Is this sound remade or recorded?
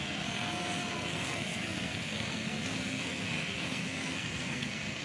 remade